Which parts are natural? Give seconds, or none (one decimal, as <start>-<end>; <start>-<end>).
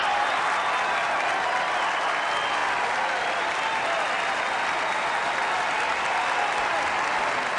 0.0-7.6